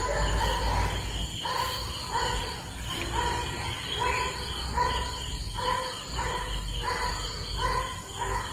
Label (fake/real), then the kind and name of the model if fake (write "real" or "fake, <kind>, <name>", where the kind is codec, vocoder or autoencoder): real